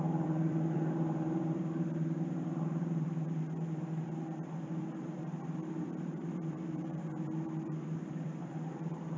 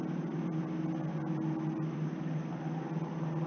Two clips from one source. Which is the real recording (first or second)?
second